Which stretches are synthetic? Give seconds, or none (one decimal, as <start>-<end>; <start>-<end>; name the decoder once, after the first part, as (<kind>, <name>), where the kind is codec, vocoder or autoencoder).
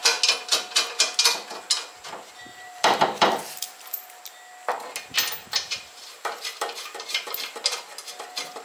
2.5-4.2 (vocoder, BigVGAN v2); 5.4-7.3